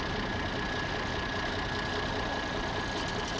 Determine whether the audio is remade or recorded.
recorded